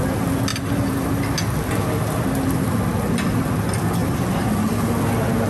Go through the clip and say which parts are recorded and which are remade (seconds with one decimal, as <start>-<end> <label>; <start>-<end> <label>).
0.0-0.5 recorded; 0.5-1.2 remade; 1.2-4.0 recorded; 4.0-4.7 remade; 4.7-5.5 recorded